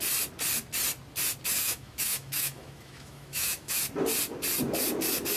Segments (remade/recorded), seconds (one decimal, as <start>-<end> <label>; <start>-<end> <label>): 0.0-1.6 recorded; 1.6-3.8 remade; 3.8-5.4 recorded